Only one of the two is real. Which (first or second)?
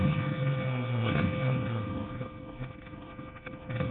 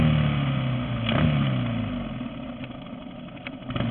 second